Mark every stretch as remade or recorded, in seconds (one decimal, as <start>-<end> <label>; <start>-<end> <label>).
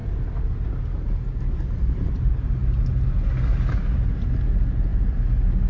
0.0-5.7 recorded